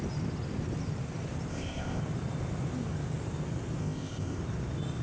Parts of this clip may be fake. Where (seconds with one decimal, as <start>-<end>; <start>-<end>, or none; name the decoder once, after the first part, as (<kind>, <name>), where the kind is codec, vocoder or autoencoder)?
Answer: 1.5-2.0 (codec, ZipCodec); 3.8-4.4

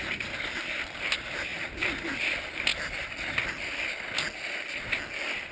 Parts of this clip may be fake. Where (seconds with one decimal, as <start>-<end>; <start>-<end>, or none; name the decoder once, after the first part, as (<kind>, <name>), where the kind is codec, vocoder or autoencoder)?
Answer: none

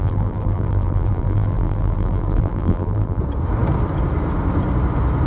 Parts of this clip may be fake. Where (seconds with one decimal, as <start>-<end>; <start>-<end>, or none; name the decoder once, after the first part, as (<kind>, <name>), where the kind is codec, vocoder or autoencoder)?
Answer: 0.0-3.2 (vocoder, BigVGAN v2)

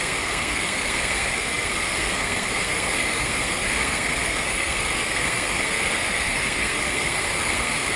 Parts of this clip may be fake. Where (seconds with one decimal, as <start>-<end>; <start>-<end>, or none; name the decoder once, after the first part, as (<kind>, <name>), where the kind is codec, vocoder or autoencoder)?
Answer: 0.0-8.0 (codec, SNAC)

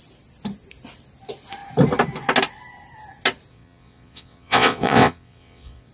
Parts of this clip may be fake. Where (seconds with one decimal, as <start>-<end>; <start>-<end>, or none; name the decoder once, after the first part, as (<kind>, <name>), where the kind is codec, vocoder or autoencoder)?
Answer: 3.5-5.9 (vocoder, WaveNeXt)

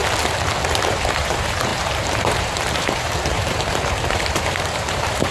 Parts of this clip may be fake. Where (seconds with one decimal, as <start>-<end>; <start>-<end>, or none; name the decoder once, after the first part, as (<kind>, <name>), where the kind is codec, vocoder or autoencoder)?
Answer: 0.9-5.3 (vocoder, BigVGAN v2)

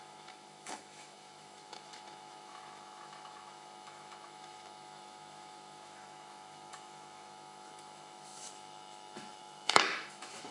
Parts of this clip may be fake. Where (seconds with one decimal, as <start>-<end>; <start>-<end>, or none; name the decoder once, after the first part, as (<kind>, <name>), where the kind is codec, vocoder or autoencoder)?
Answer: 0.0-10.5 (autoencoder, DAC-VAE)

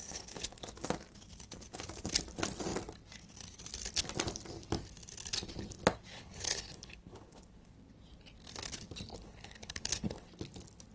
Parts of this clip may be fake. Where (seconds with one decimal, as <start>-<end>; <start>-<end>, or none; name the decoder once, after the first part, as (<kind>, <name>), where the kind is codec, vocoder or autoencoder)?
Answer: 0.0-0.6 (codec, HILCodec); 6.1-7.7; 9.1-10.3